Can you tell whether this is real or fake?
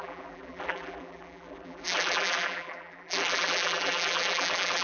fake